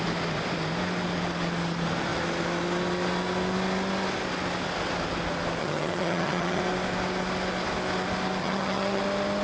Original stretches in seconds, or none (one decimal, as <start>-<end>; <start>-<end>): 0.0-5.6; 6.6-8.4; 9.0-9.4